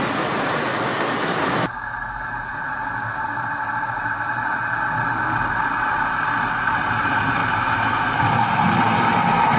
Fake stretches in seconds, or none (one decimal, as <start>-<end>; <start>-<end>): 0.0-0.7; 2.4-2.8; 7.0-7.4